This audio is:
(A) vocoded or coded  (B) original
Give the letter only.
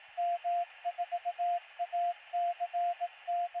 A